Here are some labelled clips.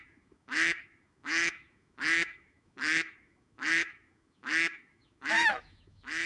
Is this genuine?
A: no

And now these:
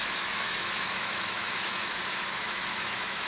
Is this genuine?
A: no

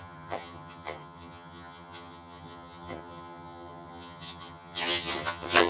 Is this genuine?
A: no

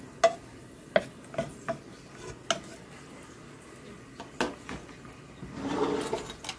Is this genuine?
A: yes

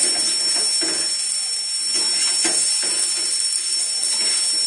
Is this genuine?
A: yes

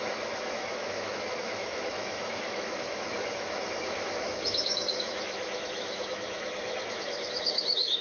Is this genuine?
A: no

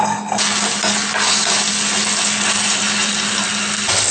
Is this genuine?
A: yes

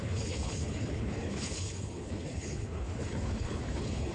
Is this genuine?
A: no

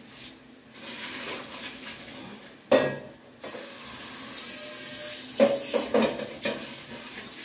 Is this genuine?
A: yes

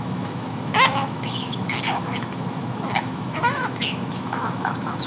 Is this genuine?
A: no